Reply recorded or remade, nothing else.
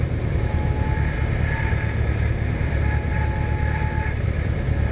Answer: recorded